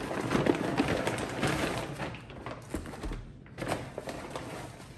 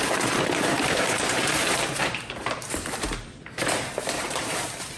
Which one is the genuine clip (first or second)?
first